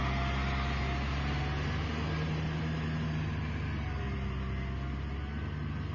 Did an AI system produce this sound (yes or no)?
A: no